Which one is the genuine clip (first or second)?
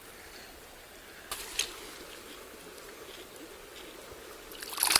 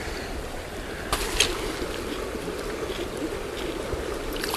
first